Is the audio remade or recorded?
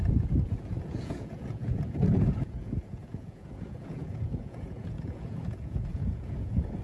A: remade